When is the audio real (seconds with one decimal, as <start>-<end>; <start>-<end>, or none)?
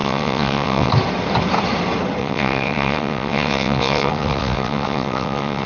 0.9-2.2